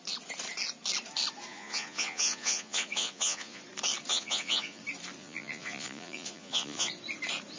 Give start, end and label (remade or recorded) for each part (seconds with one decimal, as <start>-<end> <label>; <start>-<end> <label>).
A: 0.0-1.5 recorded; 1.5-3.6 remade; 3.6-4.1 recorded; 4.1-4.8 remade; 4.8-5.2 recorded; 5.2-6.9 remade; 6.9-7.6 recorded